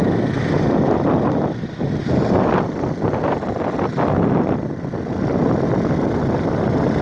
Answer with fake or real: real